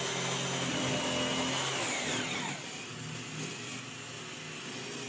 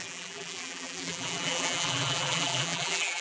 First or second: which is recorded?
first